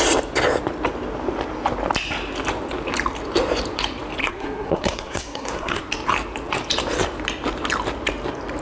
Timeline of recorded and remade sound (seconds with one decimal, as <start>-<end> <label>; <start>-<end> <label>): 0.0-4.2 recorded; 4.2-5.8 remade; 5.8-8.6 recorded